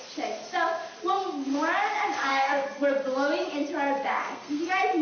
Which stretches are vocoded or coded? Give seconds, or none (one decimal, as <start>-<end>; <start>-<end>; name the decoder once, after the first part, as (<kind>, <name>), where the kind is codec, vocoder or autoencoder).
2.3-2.8 (codec, SNAC); 4.1-4.6